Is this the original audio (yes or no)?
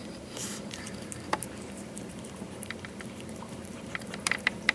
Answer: no